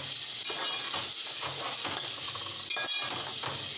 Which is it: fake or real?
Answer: real